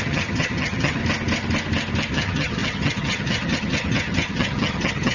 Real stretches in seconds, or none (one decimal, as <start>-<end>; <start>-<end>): 1.0-2.1